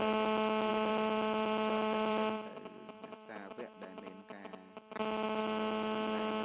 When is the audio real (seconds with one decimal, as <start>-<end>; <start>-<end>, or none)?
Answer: 0.0-0.7; 4.5-6.4